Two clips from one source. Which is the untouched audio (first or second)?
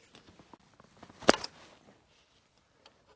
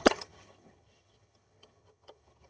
first